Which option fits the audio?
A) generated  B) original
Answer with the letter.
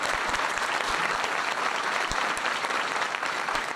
A